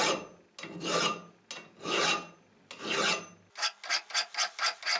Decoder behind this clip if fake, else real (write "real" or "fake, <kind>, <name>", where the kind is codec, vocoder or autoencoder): real